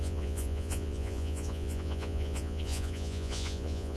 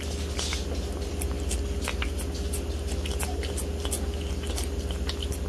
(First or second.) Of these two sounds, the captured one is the second